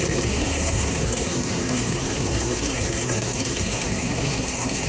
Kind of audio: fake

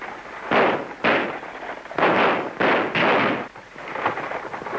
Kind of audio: real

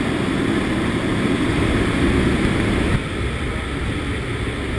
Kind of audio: real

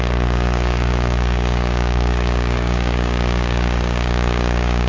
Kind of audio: fake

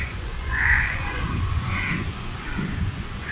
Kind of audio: fake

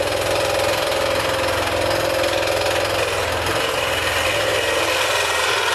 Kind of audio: real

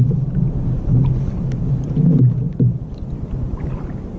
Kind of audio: real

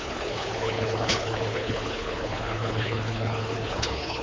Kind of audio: fake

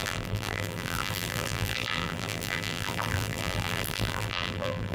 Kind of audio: fake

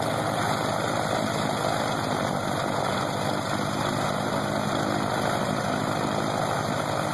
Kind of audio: real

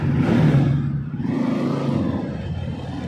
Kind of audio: real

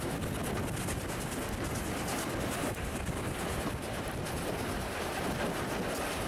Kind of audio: real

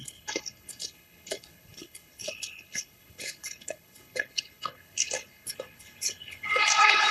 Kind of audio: fake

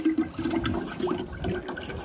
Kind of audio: real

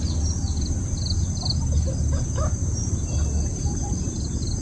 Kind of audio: real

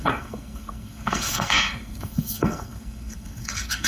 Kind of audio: fake